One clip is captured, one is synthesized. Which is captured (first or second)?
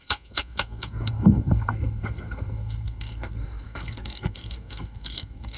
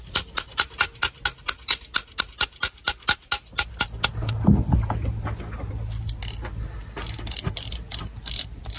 second